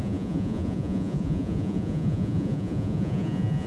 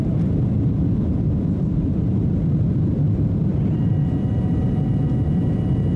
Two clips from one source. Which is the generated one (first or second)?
first